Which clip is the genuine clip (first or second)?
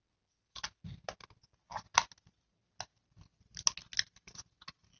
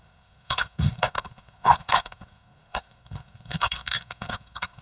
first